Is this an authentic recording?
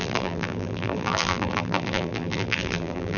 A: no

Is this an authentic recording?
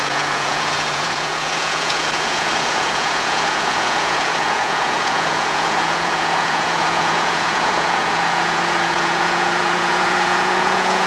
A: no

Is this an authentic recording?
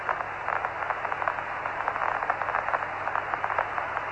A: yes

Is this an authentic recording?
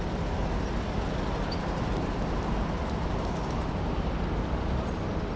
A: yes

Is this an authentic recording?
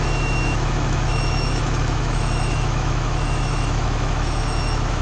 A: no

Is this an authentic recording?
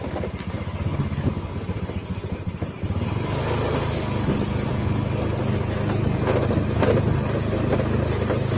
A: yes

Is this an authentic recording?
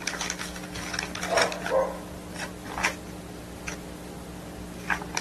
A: yes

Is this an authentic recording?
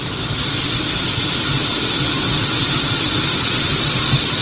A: yes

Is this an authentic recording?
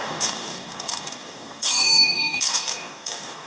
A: no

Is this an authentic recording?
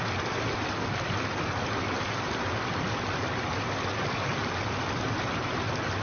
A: yes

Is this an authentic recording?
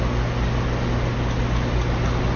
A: yes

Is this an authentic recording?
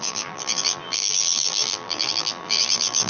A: no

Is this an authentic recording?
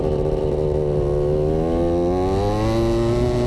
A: yes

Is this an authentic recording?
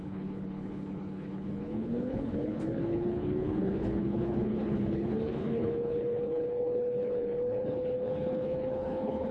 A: no